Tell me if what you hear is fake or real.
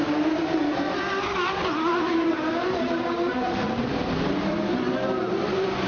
fake